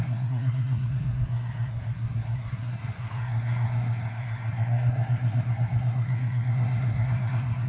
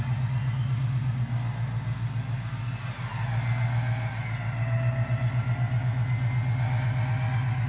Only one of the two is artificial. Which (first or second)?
first